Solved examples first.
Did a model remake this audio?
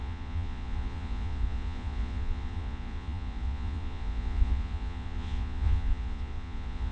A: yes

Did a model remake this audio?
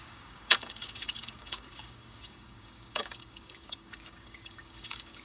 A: yes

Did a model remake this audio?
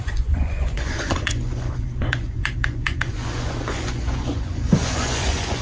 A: yes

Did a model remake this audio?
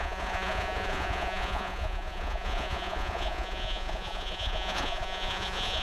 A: yes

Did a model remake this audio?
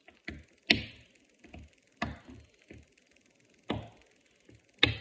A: no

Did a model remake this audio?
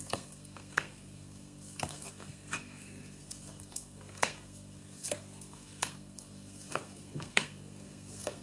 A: yes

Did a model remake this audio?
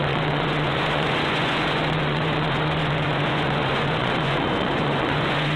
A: yes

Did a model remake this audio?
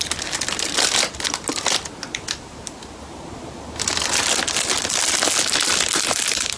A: no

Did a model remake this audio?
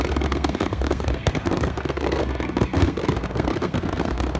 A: yes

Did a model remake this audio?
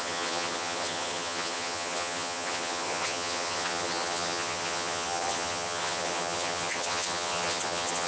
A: yes